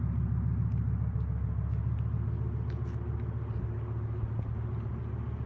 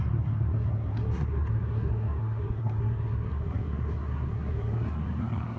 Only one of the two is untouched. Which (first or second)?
first